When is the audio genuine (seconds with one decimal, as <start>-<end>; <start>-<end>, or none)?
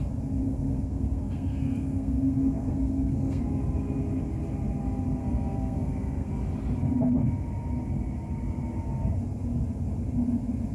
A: 0.0-0.4; 3.4-5.2; 6.3-10.7